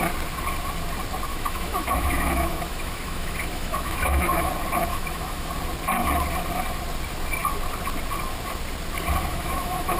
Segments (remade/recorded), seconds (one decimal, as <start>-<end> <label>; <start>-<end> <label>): 0.0-1.3 recorded; 1.3-4.5 remade; 4.5-4.9 recorded; 4.9-5.5 remade; 5.5-9.3 recorded; 9.3-10.0 remade